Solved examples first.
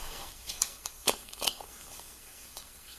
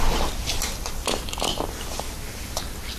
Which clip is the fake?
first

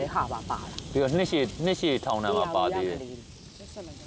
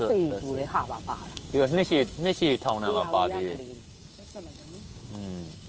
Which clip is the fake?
second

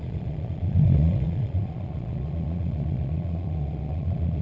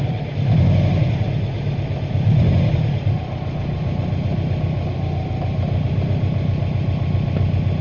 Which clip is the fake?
first